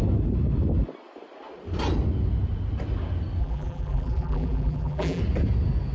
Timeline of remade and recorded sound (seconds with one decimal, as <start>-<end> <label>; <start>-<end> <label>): 0.0-3.4 recorded; 3.4-5.2 remade; 5.2-5.9 recorded